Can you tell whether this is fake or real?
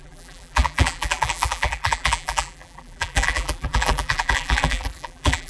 fake